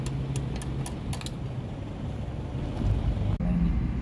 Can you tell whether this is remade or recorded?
recorded